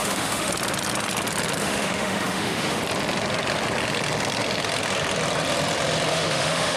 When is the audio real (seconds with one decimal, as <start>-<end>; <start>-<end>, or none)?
0.5-1.6; 2.8-6.1